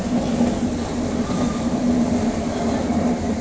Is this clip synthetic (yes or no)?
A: yes